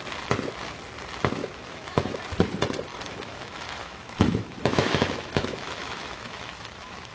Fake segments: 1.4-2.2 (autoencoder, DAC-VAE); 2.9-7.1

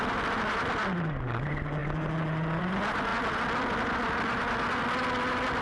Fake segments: none

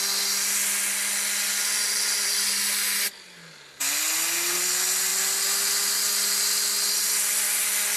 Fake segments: none

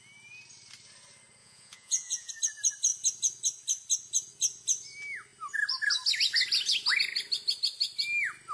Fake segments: 1.4-2.3 (vocoder, Vocos)

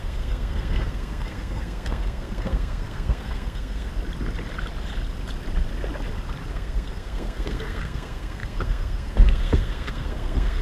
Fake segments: 0.0-3.9 (codec, SNAC); 6.5-10.6

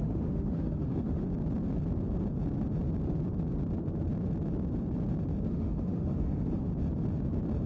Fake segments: 0.0-1.2 (autoencoder, DAC-VAE); 5.5-6.7

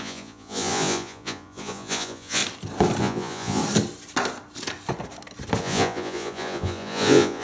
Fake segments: 0.0-2.4 (vocoder, Vocos); 3.0-3.6; 5.6-7.4

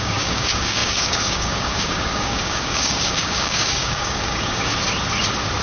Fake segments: 0.0-4.7 (codec, DAC)